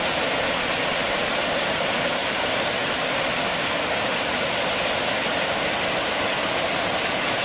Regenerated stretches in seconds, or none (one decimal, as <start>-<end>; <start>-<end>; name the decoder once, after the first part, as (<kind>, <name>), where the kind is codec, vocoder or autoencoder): none